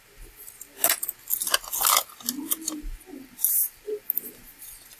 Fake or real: real